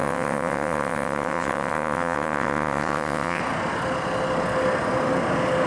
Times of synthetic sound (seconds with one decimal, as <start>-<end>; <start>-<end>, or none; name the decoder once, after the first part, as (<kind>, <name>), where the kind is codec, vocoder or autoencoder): 0.0-3.4 (vocoder, WaveNeXt)